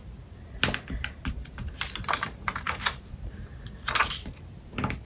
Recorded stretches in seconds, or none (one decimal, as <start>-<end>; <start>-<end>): 0.0-1.0; 4.0-5.0